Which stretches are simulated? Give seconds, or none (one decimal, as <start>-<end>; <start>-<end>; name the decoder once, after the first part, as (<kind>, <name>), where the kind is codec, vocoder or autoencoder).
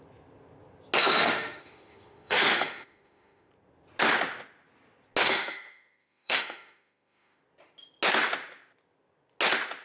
1.0-3.5 (autoencoder, DAC-VAE); 5.2-7.4